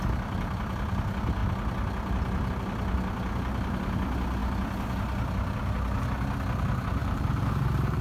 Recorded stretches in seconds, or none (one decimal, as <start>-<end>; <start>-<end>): 0.0-7.0